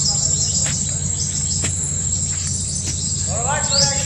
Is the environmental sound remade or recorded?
recorded